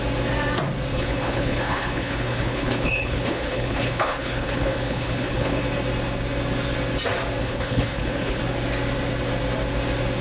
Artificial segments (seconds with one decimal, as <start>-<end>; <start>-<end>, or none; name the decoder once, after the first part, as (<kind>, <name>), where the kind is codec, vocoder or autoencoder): 0.9-5.6 (codec, HILCodec); 7.4-8.4